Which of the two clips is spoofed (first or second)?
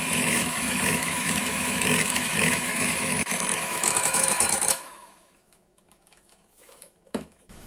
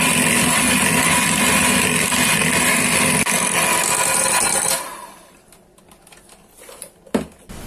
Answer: first